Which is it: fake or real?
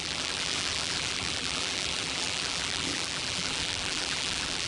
fake